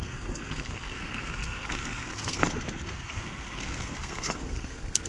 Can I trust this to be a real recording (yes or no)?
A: no